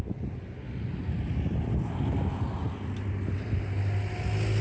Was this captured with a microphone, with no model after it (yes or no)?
yes